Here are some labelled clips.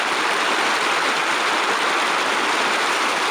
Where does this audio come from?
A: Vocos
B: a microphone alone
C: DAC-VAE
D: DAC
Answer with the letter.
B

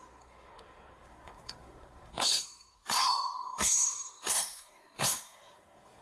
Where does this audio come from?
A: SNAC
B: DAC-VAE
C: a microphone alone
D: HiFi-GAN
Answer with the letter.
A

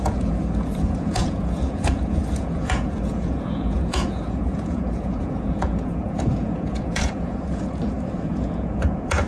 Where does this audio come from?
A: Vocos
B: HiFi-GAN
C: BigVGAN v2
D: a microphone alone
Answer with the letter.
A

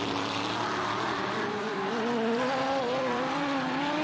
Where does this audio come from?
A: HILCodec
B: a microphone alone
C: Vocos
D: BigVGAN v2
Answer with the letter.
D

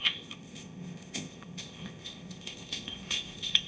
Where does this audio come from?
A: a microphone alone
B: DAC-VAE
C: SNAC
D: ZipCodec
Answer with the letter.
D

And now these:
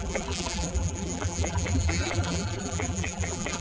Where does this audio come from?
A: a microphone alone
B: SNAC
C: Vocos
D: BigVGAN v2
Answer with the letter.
D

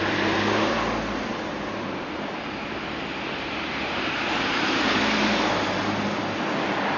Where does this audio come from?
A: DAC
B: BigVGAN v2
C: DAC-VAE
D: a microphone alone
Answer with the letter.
D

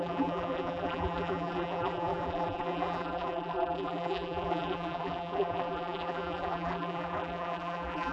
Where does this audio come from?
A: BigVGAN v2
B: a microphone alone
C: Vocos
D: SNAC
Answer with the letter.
A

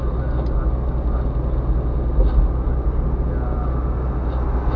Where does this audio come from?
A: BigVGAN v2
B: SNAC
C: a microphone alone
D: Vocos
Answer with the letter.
C